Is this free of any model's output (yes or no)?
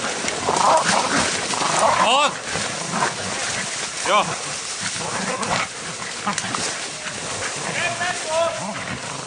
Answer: yes